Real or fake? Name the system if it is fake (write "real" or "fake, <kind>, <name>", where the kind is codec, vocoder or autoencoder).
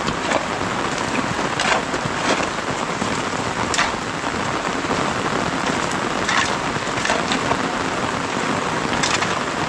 real